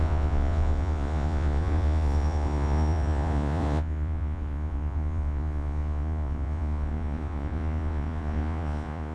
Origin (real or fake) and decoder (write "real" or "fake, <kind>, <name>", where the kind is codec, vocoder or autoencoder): fake, vocoder, Vocos